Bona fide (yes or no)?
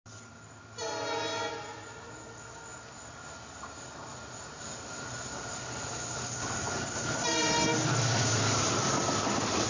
yes